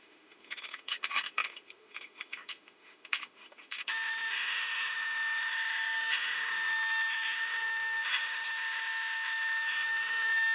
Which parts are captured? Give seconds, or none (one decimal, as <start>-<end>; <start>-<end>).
none